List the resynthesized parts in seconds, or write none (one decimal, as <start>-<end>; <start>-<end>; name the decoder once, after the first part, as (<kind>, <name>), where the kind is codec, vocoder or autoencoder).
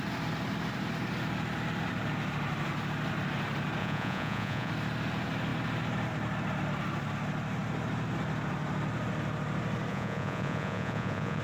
3.8-4.7 (vocoder, Vocos); 9.9-11.4